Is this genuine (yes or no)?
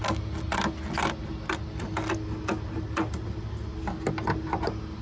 yes